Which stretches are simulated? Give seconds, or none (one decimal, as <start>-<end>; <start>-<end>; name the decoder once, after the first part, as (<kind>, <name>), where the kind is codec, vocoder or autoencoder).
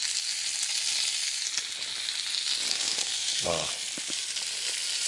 2.7-3.7 (codec, SNAC)